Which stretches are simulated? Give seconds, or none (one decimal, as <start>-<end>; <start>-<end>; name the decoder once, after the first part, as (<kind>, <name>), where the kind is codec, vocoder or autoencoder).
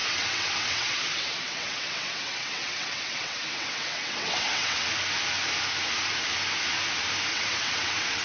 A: 0.0-4.9 (vocoder, WaveNeXt); 7.3-8.2